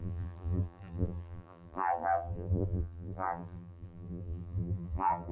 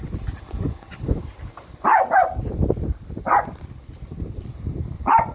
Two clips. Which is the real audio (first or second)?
second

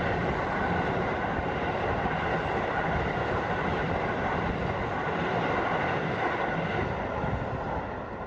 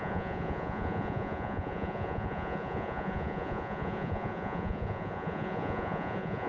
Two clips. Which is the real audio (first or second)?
first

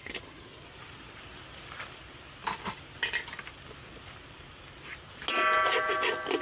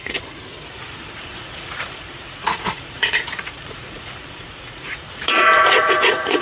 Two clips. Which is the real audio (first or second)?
first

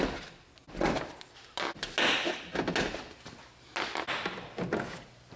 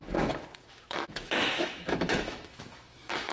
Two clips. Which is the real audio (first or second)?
first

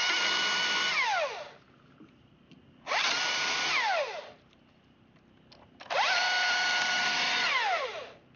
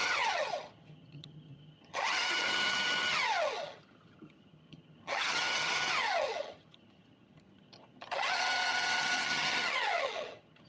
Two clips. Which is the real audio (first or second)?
first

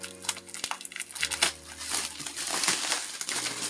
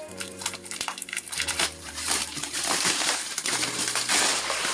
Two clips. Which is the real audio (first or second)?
first